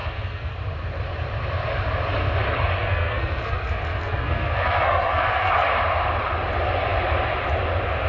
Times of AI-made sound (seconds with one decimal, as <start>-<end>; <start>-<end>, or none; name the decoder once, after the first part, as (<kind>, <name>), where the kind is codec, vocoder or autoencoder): 0.0-0.5 (codec, SNAC); 2.8-5.5